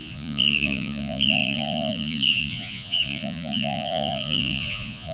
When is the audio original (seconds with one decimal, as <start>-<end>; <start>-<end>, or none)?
none